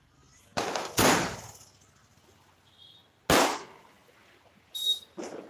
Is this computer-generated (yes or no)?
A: no